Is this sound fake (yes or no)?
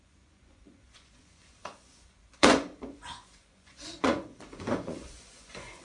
yes